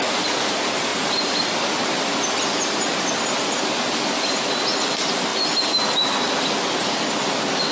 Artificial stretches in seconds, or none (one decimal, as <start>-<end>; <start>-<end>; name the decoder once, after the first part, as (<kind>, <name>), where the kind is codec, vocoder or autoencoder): none